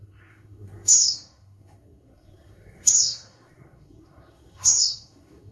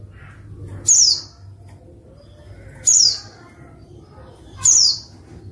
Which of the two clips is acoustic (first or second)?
second